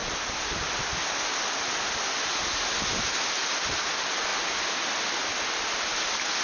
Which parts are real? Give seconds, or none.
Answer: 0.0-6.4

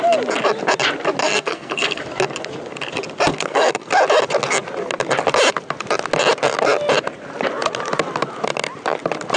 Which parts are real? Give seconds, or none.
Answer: 0.0-1.2; 2.0-3.3; 3.9-9.4

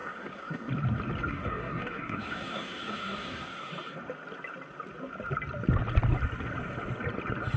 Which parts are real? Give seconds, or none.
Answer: 0.7-1.3; 3.7-7.6

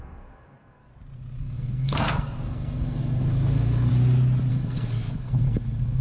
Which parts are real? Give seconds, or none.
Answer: 0.9-1.4; 3.9-4.5

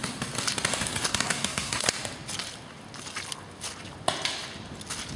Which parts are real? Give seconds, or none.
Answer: 0.0-1.1; 1.8-5.2

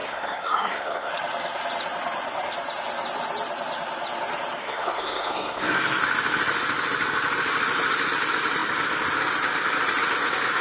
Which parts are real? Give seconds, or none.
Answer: 1.1-4.6; 6.0-10.6

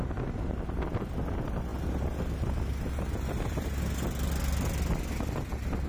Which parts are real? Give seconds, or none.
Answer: 0.0-5.9

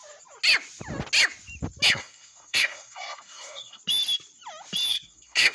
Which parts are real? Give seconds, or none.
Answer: 0.0-1.9; 3.8-4.9